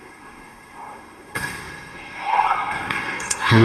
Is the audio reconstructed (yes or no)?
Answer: yes